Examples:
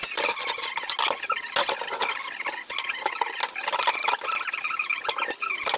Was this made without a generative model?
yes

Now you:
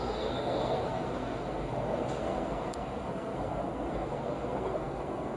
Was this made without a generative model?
no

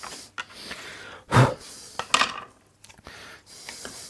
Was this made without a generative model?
yes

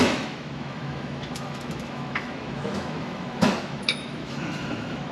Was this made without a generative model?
no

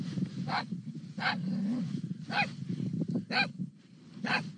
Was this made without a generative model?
yes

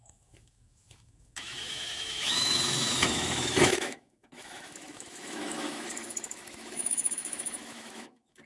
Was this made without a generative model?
no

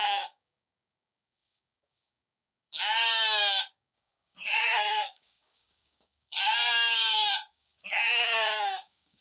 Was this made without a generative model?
no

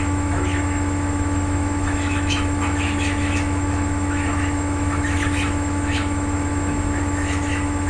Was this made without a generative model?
no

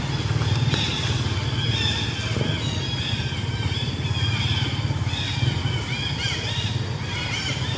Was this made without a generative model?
yes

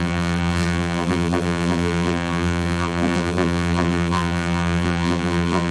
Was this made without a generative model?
no